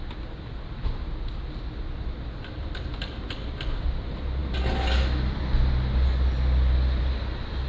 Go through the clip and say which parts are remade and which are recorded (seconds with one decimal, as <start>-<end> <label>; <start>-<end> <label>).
0.0-7.7 recorded